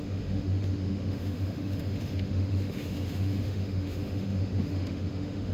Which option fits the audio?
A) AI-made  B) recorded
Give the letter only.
A